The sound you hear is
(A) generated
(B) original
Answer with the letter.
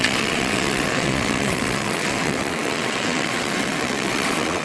A